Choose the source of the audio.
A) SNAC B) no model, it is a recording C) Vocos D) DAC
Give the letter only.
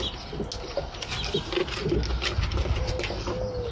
B